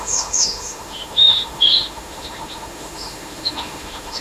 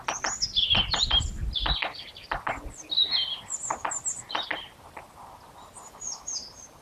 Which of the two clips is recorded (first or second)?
second